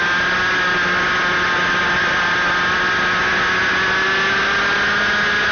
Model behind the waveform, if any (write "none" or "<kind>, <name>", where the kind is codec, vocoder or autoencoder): none